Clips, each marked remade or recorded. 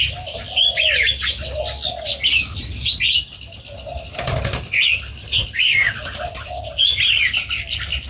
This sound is recorded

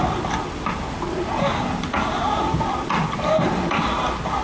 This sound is recorded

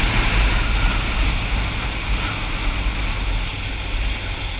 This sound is recorded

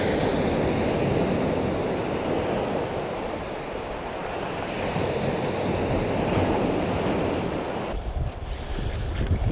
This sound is recorded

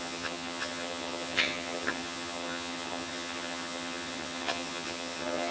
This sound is remade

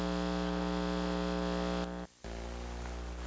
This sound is recorded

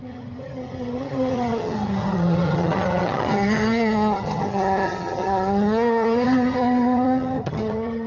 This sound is remade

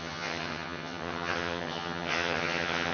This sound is remade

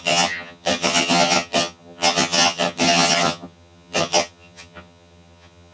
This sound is remade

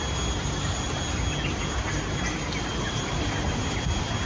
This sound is recorded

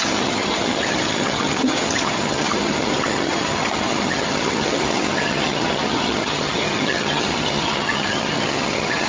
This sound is remade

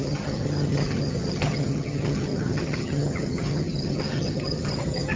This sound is remade